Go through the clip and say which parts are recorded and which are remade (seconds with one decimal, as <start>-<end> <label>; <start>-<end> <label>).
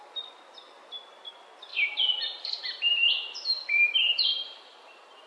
0.0-1.7 recorded; 1.7-5.3 remade